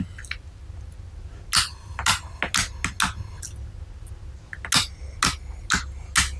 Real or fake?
real